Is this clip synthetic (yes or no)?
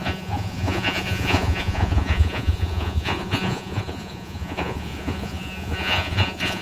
yes